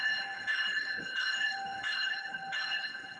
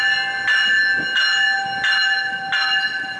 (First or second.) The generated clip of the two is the first